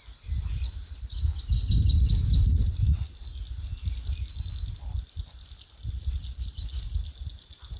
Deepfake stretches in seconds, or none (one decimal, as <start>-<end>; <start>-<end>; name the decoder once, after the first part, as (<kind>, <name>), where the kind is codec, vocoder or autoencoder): none